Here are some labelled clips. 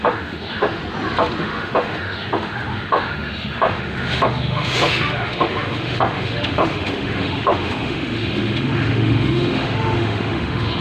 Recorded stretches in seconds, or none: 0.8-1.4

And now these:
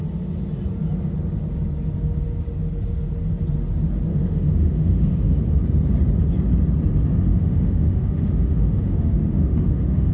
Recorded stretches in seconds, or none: 0.0-4.1; 5.4-7.3

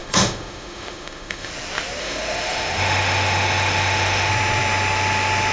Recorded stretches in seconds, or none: 1.5-2.0; 4.3-5.5

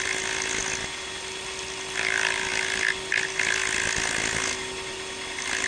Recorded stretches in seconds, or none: 0.0-5.7

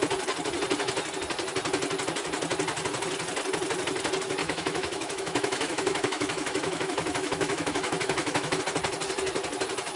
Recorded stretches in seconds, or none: 0.0-4.4; 8.6-10.0

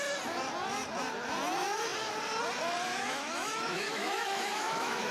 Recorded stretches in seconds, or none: 0.0-2.9

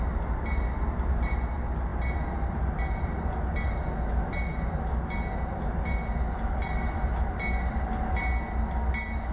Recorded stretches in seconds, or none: 0.0-9.3